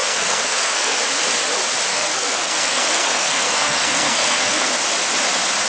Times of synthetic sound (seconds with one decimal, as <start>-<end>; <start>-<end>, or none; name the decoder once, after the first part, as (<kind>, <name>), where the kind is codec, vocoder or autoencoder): 0.0-1.0 (codec, SNAC); 1.9-4.7